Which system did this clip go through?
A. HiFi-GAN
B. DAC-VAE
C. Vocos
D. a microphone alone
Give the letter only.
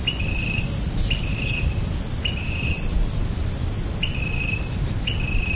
D